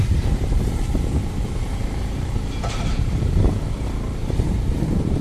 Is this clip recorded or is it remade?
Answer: remade